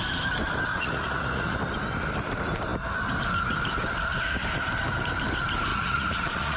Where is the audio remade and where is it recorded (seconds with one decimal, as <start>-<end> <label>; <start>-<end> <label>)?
0.0-0.7 recorded; 0.7-1.6 remade; 1.6-5.7 recorded; 5.7-6.6 remade